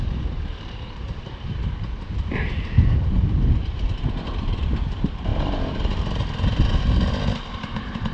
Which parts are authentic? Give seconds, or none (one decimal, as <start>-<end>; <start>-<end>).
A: 5.3-7.5